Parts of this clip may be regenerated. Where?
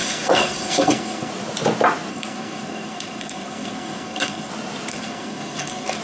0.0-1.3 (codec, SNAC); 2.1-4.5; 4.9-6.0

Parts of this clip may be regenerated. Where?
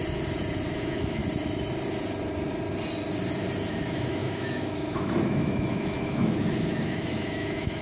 0.7-1.2 (autoencoder, DAC-VAE); 3.7-7.8